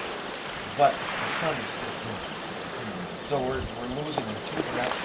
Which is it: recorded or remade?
recorded